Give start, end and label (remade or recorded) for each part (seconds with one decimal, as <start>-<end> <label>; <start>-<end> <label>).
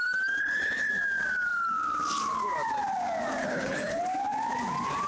0.0-0.4 recorded; 0.4-0.9 remade; 0.9-3.4 recorded; 3.4-4.0 remade; 4.0-5.1 recorded